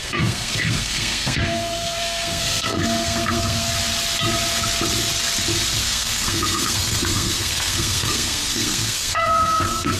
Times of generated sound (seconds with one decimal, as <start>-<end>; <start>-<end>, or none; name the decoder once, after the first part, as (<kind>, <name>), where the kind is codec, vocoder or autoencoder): 0.0-3.7 (codec, SNAC); 5.8-10.0